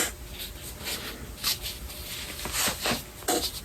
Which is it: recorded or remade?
recorded